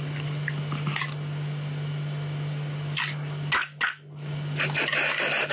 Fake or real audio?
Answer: real